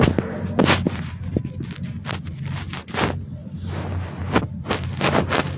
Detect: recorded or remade recorded